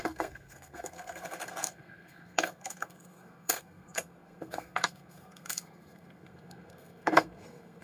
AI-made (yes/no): yes